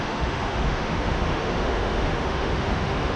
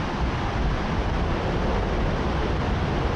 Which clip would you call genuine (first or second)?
second